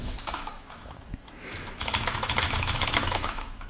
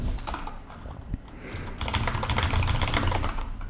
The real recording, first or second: second